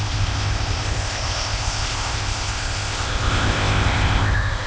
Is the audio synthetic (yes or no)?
yes